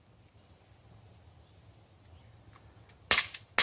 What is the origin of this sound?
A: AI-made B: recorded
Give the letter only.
B